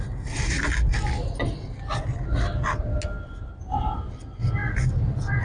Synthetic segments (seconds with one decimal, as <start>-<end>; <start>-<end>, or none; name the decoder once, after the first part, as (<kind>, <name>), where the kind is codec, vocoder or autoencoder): none